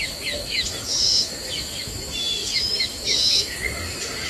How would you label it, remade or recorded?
remade